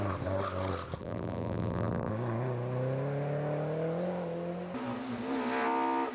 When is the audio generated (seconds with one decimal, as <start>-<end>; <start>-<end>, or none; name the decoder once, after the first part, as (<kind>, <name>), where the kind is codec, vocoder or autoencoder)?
1.0-2.1 (vocoder, BigVGAN v2)